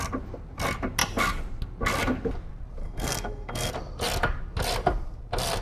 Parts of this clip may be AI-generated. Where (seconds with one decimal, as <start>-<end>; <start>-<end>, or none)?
2.8-3.7